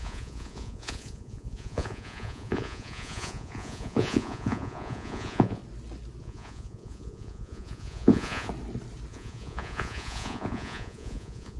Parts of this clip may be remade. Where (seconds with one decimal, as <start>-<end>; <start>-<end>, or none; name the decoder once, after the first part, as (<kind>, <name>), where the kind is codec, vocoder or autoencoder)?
0.0-5.6 (vocoder, Vocos); 6.2-8.5; 9.1-11.6